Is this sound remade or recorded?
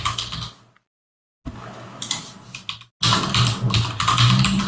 recorded